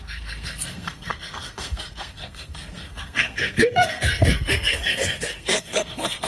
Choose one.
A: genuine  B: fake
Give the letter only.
B